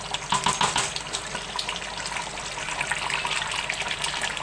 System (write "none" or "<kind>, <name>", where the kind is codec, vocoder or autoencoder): none